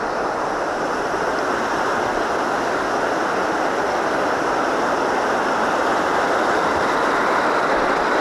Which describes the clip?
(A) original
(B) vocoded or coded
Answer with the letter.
A